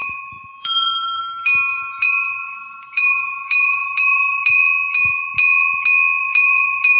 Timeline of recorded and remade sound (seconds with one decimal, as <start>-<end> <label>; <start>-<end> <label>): 0.0-1.2 remade; 1.2-1.7 recorded; 1.7-4.6 remade; 4.6-6.2 recorded; 6.2-7.0 remade

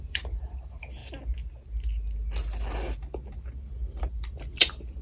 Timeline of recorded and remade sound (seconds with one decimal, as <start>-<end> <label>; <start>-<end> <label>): 0.0-1.0 remade; 1.0-4.0 recorded; 4.0-5.0 remade

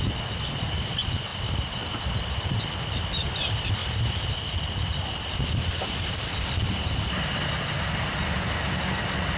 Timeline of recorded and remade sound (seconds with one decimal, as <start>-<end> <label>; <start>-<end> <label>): 0.0-9.4 recorded

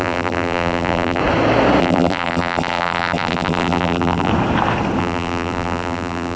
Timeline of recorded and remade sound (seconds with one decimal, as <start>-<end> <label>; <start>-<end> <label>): 0.0-1.2 remade; 1.2-1.8 recorded; 1.8-4.3 remade; 4.3-5.0 recorded; 5.0-6.4 remade

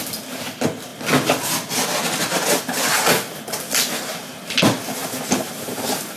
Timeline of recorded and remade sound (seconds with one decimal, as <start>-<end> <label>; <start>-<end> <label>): 0.0-5.0 recorded; 5.0-6.2 remade

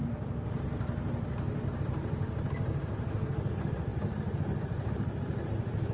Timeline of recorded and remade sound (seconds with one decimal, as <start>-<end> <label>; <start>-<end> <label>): 0.0-3.5 recorded; 3.5-5.9 remade

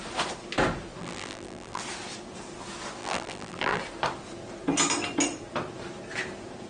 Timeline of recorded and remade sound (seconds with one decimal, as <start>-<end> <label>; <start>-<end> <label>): 0.0-1.0 recorded; 1.0-1.8 remade; 1.8-3.0 recorded; 3.0-3.8 remade; 3.8-6.7 recorded